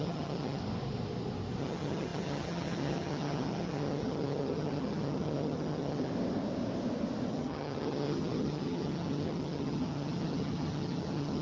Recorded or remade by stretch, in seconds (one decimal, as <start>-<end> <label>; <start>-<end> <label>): 0.0-0.6 remade; 0.6-1.6 recorded; 1.6-6.1 remade; 6.1-7.3 recorded; 7.3-11.4 remade